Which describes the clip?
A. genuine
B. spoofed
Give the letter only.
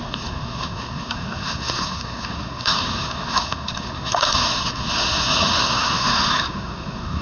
B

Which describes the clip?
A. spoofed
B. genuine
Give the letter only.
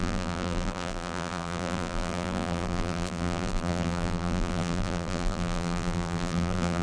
A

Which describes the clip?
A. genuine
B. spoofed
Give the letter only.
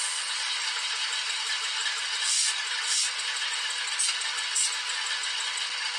A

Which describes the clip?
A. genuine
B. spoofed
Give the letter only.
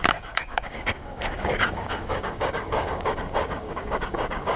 B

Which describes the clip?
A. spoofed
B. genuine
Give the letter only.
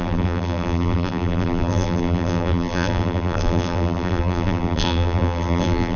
A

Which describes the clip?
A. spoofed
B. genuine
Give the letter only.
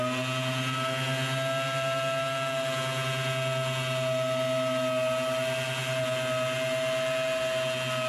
B